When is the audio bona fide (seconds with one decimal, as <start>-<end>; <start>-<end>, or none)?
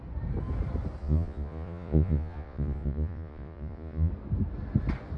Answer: 0.0-1.0; 4.1-5.2